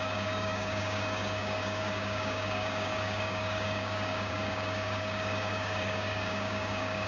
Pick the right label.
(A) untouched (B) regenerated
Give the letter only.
B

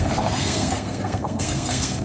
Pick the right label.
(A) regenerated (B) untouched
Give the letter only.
A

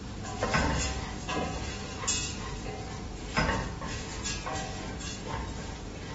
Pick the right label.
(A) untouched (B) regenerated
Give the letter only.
A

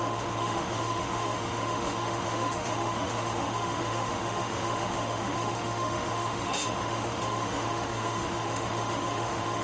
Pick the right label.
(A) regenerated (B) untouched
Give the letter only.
A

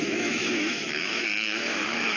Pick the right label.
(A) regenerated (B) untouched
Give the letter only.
A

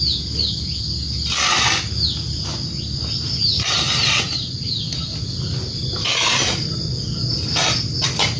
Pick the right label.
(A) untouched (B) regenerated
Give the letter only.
A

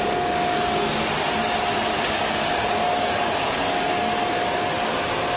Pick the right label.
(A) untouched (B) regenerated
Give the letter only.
A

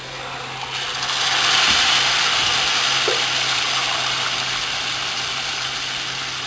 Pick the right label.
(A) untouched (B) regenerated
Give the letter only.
A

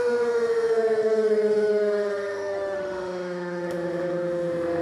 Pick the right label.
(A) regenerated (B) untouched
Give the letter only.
A